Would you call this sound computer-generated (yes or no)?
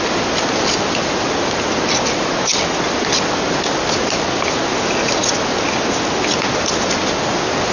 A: no